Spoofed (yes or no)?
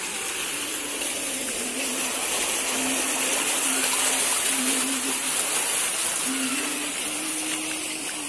no